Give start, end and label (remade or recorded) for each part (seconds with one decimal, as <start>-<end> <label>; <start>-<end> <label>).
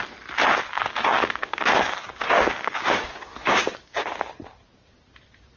0.0-0.7 recorded; 0.7-4.1 remade; 4.1-5.6 recorded